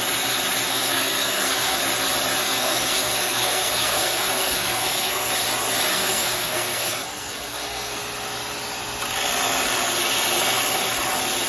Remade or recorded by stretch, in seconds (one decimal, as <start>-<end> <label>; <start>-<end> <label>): 0.0-0.7 recorded; 0.7-1.8 remade; 1.8-2.4 recorded; 2.4-5.3 remade; 5.3-5.9 recorded; 5.9-8.0 remade; 8.0-11.5 recorded